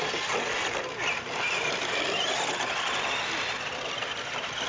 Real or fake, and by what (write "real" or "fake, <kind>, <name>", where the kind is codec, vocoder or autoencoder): real